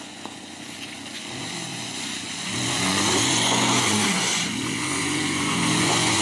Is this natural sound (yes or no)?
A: no